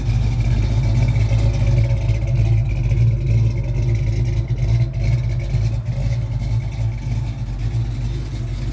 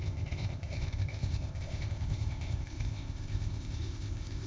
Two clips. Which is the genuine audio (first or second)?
first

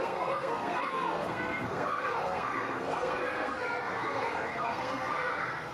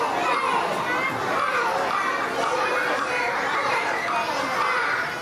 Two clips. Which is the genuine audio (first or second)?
second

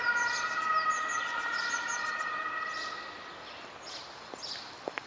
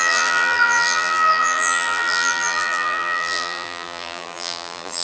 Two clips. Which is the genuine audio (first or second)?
first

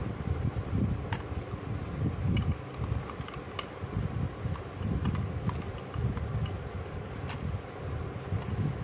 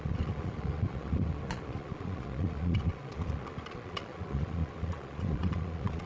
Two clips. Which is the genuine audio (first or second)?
first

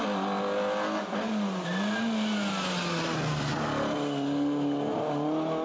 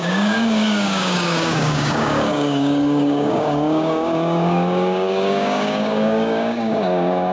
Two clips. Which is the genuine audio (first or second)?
first